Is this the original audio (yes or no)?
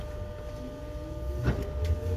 yes